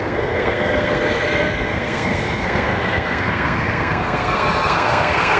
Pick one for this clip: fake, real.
fake